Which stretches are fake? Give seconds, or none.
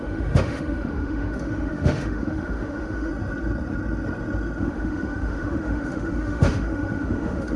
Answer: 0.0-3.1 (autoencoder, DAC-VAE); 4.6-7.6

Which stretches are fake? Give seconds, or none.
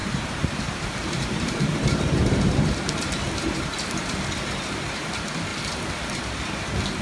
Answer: 0.0-4.2 (vocoder, BigVGAN v2)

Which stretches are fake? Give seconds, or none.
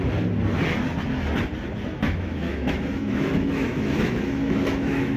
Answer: 1.9-5.2 (autoencoder, DAC-VAE)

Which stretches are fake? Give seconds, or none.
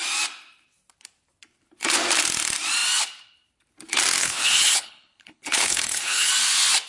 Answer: 4.2-6.3 (codec, HILCodec)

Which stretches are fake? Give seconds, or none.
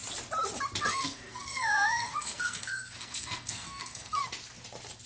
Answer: 0.8-4.2 (codec, SNAC)